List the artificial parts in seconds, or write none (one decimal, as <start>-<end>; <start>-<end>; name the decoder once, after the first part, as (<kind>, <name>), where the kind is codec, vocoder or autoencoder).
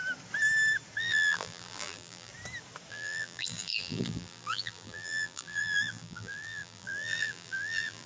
1.0-2.3 (vocoder, BigVGAN v2); 2.9-8.1